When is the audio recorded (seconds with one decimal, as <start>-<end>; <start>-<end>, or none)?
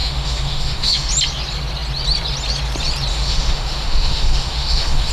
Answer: 1.1-3.1